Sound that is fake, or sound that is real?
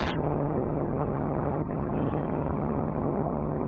fake